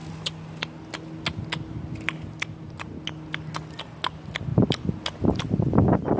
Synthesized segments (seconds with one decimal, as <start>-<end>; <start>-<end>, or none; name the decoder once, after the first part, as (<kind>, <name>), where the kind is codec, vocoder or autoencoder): none